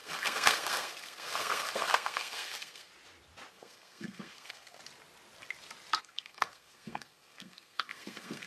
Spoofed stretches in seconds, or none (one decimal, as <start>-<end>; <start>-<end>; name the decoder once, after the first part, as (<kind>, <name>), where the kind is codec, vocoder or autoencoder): 0.0-2.9 (codec, SNAC); 3.5-4.8; 6.0-8.5